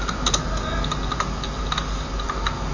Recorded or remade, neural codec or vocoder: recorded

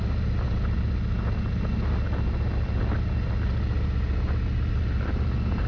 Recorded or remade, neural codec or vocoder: recorded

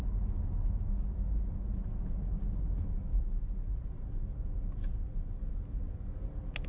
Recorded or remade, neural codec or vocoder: recorded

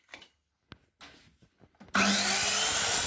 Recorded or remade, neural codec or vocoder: recorded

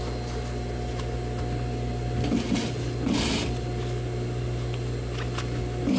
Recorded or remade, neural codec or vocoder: recorded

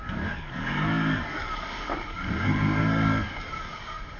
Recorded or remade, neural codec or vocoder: remade, codec, DAC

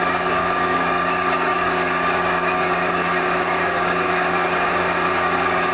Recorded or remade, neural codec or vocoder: remade, codec, DAC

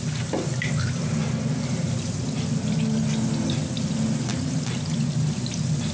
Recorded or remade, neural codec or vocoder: recorded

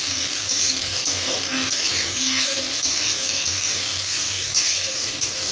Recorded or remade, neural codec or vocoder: remade, codec, DAC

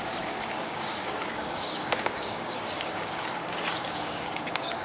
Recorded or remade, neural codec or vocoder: remade, codec, DAC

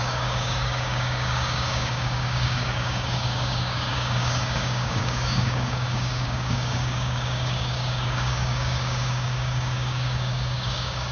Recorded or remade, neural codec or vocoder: remade, codec, DAC